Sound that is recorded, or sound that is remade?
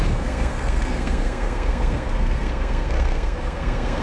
remade